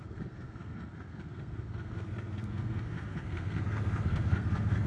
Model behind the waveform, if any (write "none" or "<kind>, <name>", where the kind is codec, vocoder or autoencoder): codec, SNAC